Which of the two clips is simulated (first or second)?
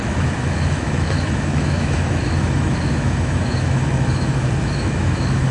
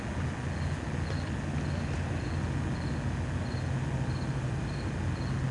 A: first